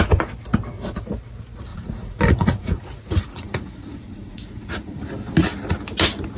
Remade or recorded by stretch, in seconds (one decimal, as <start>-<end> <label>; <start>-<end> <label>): 0.0-1.7 recorded; 1.7-5.0 remade; 5.0-6.4 recorded